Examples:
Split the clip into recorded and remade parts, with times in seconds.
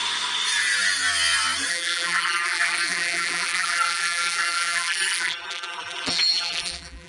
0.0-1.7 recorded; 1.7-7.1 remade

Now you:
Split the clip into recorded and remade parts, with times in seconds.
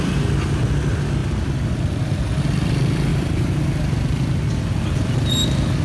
0.0-3.1 recorded; 3.1-3.6 remade; 3.6-5.8 recorded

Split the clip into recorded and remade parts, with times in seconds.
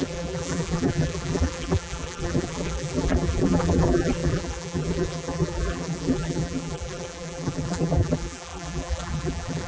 0.0-9.7 remade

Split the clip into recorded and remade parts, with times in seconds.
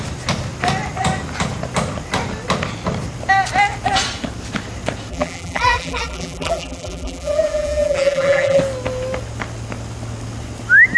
0.0-5.1 recorded; 5.1-8.6 remade; 8.6-11.0 recorded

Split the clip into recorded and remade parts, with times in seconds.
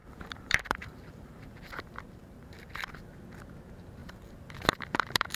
0.0-3.2 remade; 3.2-4.0 recorded; 4.0-5.4 remade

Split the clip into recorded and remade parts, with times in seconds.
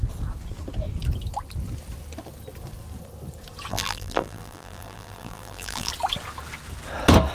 0.0-3.7 recorded; 3.7-5.9 remade; 5.9-7.3 recorded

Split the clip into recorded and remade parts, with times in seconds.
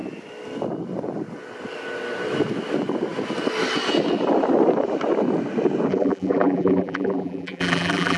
0.0-5.9 recorded; 5.9-8.2 remade